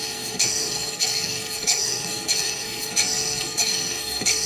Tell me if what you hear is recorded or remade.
remade